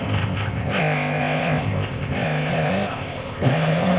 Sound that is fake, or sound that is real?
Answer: fake